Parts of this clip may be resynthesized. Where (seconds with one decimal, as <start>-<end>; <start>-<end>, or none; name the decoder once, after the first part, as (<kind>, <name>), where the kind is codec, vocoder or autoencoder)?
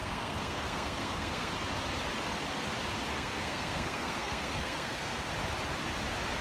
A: 0.0-1.5 (codec, SNAC); 3.1-5.3